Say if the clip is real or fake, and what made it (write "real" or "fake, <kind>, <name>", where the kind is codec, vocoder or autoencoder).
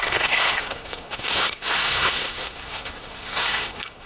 fake, codec, SNAC